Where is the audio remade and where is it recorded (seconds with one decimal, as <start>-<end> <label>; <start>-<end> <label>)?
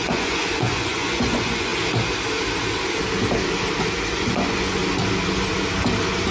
0.0-1.7 remade; 1.7-4.1 recorded; 4.1-4.8 remade; 4.8-6.3 recorded